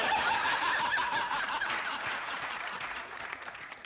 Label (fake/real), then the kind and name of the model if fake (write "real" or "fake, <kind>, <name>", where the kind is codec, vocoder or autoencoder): fake, vocoder, Vocos